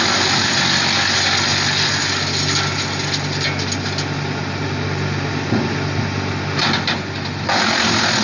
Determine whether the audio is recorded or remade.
recorded